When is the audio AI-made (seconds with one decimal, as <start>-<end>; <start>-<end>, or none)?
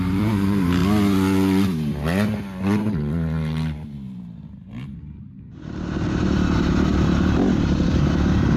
0.0-0.8; 2.8-8.6